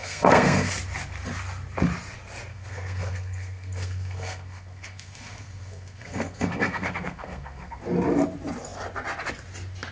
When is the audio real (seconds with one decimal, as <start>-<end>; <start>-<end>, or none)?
0.7-2.5; 7.8-9.9